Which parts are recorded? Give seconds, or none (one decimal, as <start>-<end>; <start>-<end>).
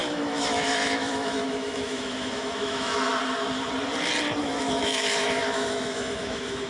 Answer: 3.1-4.4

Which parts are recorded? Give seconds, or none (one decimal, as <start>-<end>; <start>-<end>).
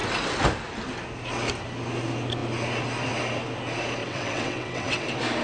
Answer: 0.0-4.0; 5.0-5.4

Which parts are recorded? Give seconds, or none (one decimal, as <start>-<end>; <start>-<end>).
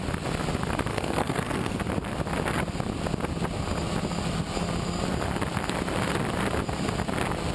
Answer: 0.0-0.9; 1.8-7.5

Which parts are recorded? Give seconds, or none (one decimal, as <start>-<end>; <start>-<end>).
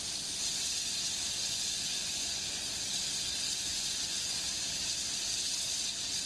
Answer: 0.0-1.4; 2.7-3.7; 4.4-6.3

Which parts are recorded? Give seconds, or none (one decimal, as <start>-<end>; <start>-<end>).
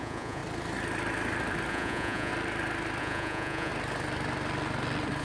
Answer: 0.4-1.7; 2.3-3.0; 3.7-5.2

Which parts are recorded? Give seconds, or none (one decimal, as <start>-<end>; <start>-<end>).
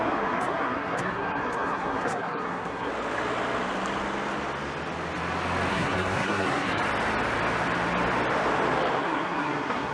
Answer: 2.9-5.7; 6.8-9.0